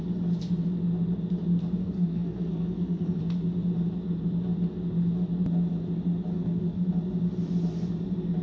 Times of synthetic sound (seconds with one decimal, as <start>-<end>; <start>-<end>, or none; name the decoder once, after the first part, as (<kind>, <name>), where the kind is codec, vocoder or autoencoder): 1.8-3.2 (codec, SNAC); 6.3-6.9